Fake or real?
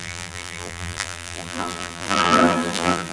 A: fake